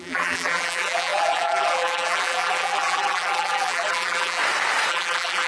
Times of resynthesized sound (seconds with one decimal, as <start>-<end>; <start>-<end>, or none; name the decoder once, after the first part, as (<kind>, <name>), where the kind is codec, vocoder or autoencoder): 0.0-4.4 (vocoder, BigVGAN v2); 4.9-5.5